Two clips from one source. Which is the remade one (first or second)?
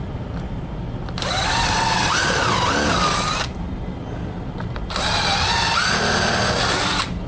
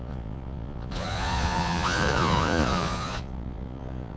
second